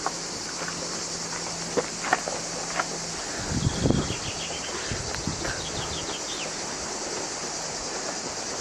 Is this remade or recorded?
recorded